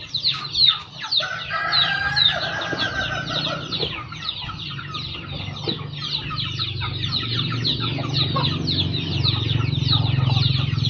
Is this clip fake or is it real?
real